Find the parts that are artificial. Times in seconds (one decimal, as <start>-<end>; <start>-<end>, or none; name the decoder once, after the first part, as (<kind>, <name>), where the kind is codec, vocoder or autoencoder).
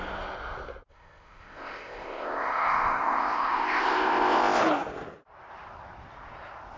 0.9-4.6 (codec, ZipCodec)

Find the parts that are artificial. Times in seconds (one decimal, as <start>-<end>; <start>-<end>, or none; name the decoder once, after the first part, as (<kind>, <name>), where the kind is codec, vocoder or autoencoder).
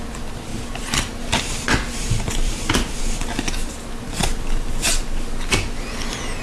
0.5-3.0 (vocoder, BigVGAN v2); 4.2-5.0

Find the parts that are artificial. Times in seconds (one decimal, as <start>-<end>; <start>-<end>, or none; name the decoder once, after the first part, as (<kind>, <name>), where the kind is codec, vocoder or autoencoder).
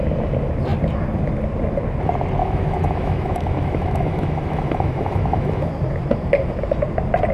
2.4-5.7 (autoencoder, DAC-VAE)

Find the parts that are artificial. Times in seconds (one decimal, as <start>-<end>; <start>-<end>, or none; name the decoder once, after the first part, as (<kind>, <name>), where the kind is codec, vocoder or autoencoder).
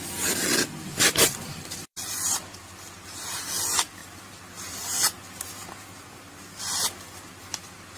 0.0-4.0 (vocoder, BigVGAN v2); 6.6-8.0